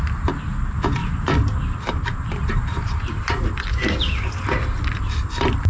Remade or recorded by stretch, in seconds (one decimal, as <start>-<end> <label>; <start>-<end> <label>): 0.0-1.0 recorded; 1.0-4.4 remade; 4.4-5.7 recorded

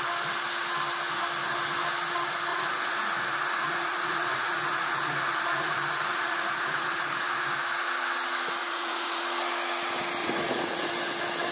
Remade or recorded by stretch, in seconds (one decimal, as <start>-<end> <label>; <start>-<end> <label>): 0.0-2.5 recorded; 2.5-7.4 remade; 7.4-8.6 recorded; 8.6-9.2 remade; 9.2-10.2 recorded; 10.2-10.9 remade; 10.9-11.5 recorded